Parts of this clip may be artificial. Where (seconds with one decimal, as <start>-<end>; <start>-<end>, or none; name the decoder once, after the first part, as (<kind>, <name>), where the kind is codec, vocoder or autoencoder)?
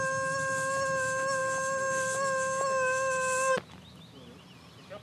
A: none